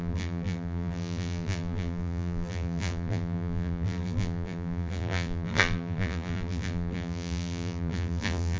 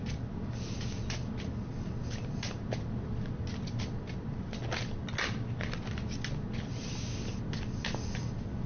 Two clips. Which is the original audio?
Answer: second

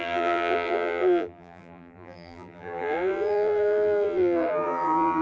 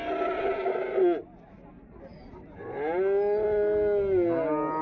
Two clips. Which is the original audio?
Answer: second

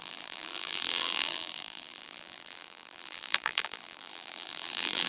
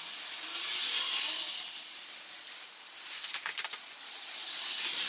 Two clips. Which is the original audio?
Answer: second